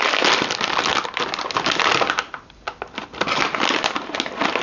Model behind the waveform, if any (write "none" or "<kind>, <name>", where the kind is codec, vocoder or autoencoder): none